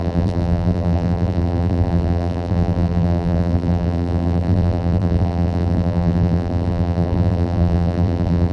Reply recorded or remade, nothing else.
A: remade